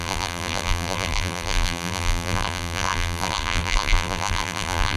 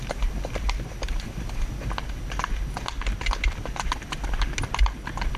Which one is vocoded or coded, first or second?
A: first